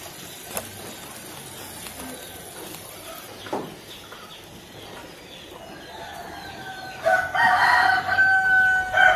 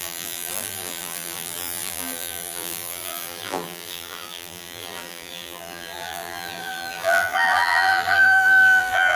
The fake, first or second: second